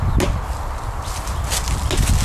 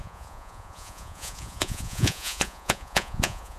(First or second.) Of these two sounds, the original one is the first